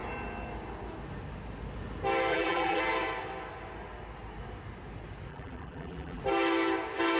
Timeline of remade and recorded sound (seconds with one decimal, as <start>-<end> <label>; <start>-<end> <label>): 0.0-2.3 recorded; 2.3-2.8 remade; 2.8-5.3 recorded; 5.3-6.2 remade; 6.2-7.2 recorded